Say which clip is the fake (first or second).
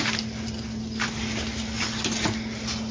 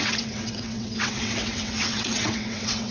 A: second